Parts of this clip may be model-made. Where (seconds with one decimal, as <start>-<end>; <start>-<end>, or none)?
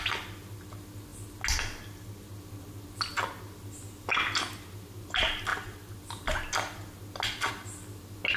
none